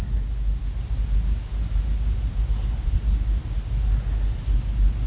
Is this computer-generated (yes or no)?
no